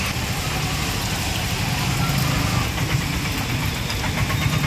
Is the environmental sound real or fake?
real